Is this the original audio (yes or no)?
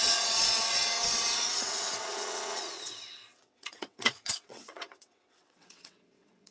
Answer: no